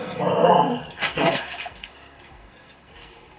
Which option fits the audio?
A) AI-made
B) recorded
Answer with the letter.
A